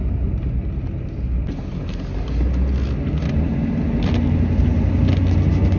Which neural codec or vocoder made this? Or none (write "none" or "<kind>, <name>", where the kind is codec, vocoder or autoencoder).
none